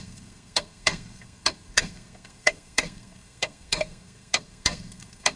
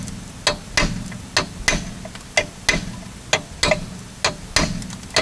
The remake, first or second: first